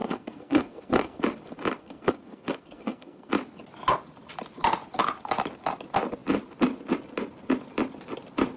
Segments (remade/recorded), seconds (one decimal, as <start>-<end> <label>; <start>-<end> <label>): 0.0-1.2 remade; 1.2-1.8 recorded; 1.8-3.3 remade; 3.3-8.6 recorded